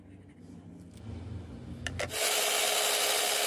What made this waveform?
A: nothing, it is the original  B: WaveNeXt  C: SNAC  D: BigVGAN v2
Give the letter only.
A